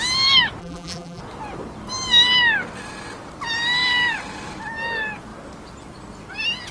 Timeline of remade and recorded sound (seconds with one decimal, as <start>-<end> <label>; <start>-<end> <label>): 0.0-0.6 recorded; 0.6-1.2 remade; 1.2-6.7 recorded